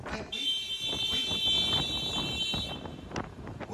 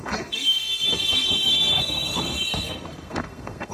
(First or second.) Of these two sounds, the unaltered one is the first